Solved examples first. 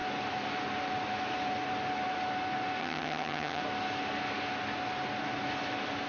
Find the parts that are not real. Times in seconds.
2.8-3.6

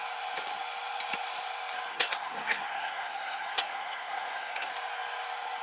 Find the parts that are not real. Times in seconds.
1.9-4.7

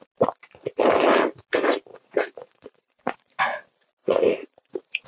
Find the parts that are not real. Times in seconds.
1.9-3.4; 4.0-5.1

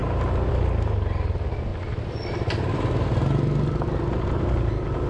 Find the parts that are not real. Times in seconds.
none

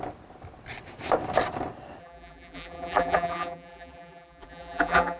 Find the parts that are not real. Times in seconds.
2.0-5.2

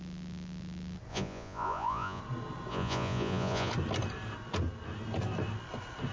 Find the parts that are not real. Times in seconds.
1.1-2.2; 2.7-3.7